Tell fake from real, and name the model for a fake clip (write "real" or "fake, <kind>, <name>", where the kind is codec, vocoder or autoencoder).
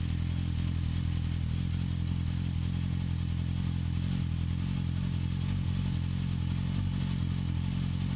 real